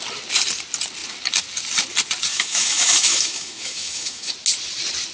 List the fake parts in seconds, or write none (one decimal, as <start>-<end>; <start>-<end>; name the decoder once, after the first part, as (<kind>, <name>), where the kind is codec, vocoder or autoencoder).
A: 2.3-4.3 (autoencoder, DAC-VAE)